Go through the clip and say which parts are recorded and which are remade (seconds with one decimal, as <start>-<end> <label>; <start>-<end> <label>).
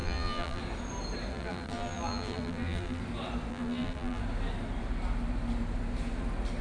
0.0-0.6 remade; 0.6-1.3 recorded; 1.3-3.0 remade; 3.0-3.5 recorded; 3.5-4.2 remade; 4.2-6.6 recorded